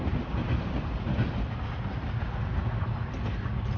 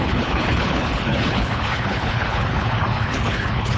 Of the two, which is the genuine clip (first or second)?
first